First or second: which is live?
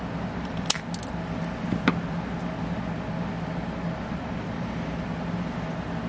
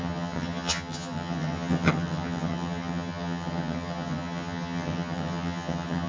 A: first